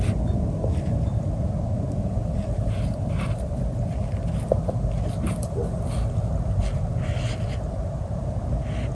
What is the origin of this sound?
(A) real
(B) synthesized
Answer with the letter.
A